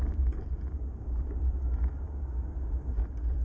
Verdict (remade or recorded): recorded